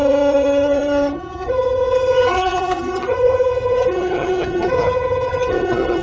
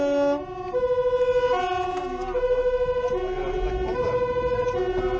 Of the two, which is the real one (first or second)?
second